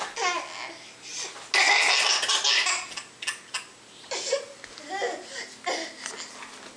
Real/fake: real